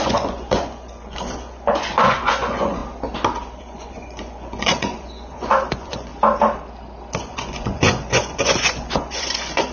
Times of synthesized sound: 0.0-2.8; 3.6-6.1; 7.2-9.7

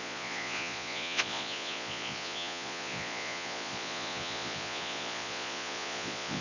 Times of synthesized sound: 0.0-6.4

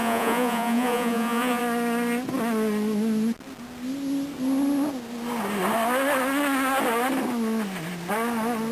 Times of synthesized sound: 0.0-1.6

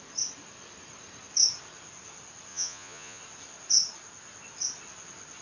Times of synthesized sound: 2.5-3.2

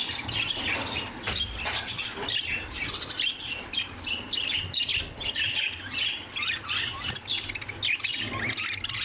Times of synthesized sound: none